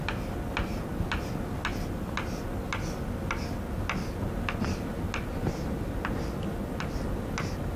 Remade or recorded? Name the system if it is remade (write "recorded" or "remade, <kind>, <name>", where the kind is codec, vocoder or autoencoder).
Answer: recorded